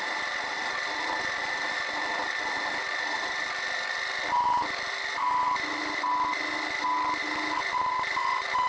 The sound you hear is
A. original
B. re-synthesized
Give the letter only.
A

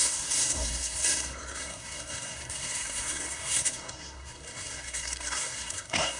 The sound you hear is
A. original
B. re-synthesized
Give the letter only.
B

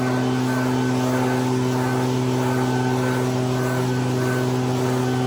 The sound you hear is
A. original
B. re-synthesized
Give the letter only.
A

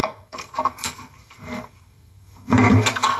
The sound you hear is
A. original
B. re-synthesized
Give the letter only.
B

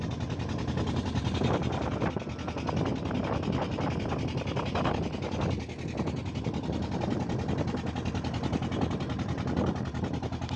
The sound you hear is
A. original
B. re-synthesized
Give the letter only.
A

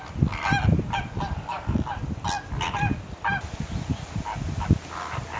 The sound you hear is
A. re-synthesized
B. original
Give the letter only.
B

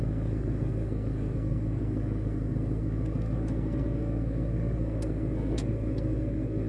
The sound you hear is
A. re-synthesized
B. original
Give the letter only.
A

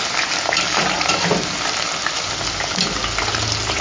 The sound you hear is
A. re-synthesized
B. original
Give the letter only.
B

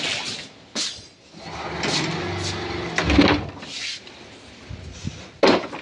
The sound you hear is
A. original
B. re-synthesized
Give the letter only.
A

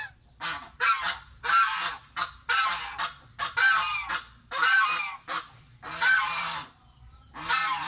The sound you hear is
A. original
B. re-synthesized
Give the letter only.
A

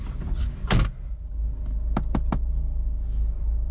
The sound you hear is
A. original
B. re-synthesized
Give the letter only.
A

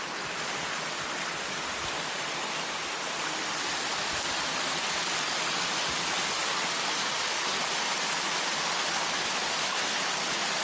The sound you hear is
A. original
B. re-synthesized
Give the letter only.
A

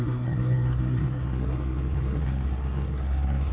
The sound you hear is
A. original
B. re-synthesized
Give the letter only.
B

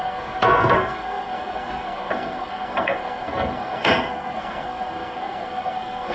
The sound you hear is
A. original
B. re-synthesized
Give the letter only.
B